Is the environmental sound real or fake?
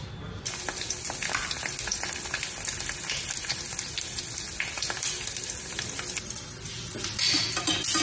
real